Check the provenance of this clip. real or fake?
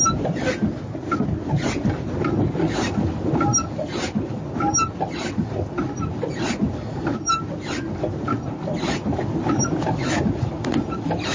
real